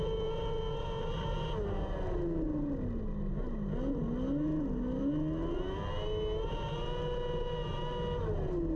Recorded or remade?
recorded